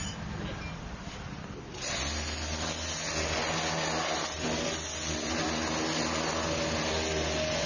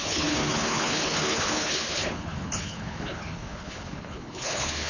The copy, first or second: second